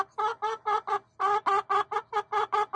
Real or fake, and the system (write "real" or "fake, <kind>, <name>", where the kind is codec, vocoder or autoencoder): real